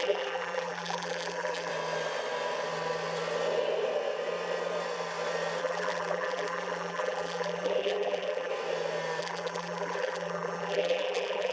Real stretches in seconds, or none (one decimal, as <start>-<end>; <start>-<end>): 1.7-5.6; 8.5-9.2